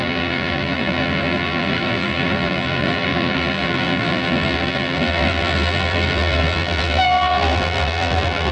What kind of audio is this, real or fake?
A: fake